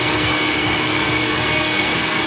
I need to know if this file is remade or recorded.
remade